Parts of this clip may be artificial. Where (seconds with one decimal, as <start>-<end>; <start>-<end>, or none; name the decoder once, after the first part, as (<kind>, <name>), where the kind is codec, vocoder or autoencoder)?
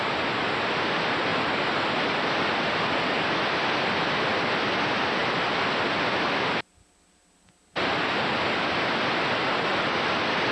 none